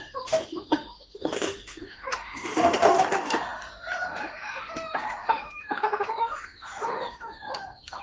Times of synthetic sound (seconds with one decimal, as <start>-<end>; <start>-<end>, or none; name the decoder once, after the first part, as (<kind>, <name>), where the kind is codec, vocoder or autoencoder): 0.0-8.0 (autoencoder, DAC-VAE)